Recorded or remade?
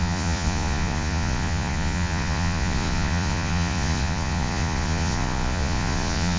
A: remade